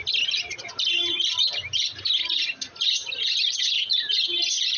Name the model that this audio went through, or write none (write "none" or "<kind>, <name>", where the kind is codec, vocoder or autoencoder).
none